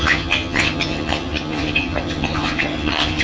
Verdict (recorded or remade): remade